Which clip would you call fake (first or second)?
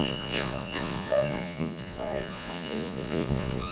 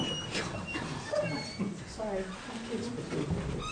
first